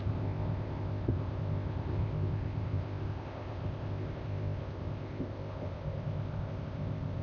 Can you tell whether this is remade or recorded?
remade